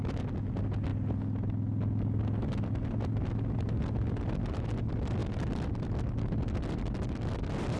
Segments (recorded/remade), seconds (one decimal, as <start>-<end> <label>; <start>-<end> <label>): 0.0-7.8 recorded